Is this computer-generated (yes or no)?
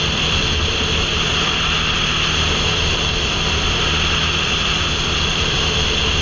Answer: no